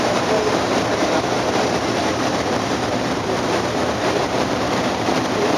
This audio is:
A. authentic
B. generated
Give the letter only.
B